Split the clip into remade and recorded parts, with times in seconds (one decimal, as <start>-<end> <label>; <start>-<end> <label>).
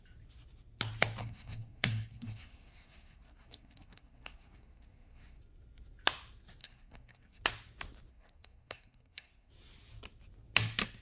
0.0-1.2 recorded; 1.2-5.4 remade; 5.4-6.6 recorded; 6.6-7.4 remade; 7.4-8.1 recorded; 8.1-9.5 remade; 9.5-11.0 recorded